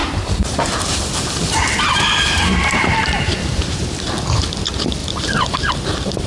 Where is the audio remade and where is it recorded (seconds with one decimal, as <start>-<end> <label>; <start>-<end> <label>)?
0.0-3.8 remade; 3.8-5.0 recorded; 5.0-6.3 remade